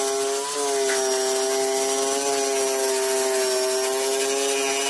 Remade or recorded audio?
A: recorded